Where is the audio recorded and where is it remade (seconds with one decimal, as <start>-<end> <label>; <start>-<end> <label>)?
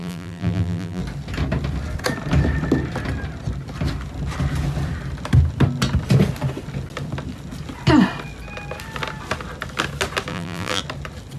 0.0-1.0 remade; 1.0-10.3 recorded; 10.3-10.8 remade; 10.8-11.4 recorded